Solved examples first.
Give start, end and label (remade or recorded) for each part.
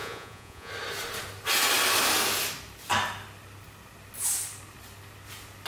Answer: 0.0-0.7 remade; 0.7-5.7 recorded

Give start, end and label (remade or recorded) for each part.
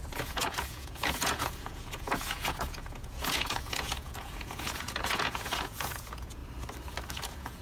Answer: 0.0-6.4 remade; 6.4-7.1 recorded; 7.1-7.6 remade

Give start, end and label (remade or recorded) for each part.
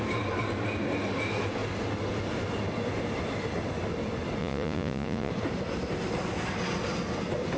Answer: 0.0-4.4 recorded; 4.4-5.3 remade; 5.3-7.6 recorded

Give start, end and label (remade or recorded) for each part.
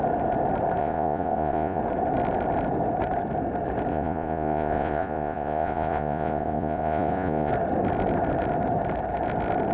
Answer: 0.0-0.8 recorded; 0.8-1.8 remade; 1.8-3.9 recorded; 3.9-7.5 remade; 7.5-9.7 recorded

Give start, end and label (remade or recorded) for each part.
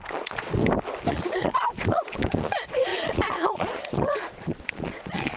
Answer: 0.0-0.6 remade; 0.6-1.1 recorded; 1.1-5.4 remade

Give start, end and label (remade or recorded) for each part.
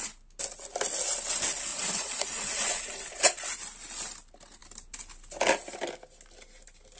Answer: 0.0-1.7 recorded; 1.7-3.2 remade; 3.2-7.0 recorded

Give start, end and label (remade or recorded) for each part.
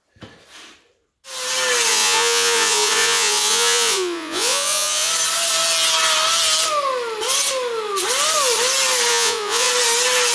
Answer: 0.0-1.9 recorded; 1.9-5.1 remade; 5.1-9.1 recorded; 9.1-9.7 remade; 9.7-10.3 recorded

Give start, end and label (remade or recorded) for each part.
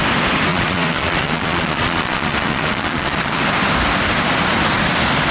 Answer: 0.0-0.5 recorded; 0.5-3.4 remade; 3.4-5.3 recorded